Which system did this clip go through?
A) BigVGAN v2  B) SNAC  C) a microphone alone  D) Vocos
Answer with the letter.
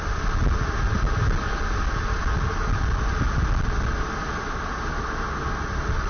C